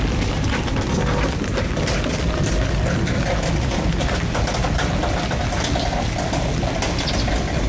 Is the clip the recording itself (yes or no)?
yes